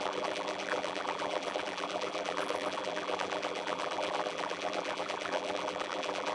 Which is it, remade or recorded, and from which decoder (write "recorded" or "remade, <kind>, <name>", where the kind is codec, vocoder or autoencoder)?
remade, vocoder, BigVGAN v2